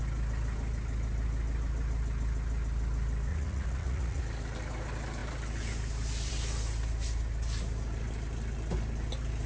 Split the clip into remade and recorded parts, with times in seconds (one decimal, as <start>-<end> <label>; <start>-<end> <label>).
0.0-3.3 recorded; 3.3-4.2 remade; 4.2-9.5 recorded